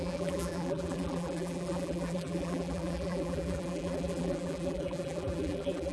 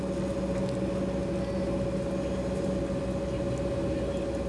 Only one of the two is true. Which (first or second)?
second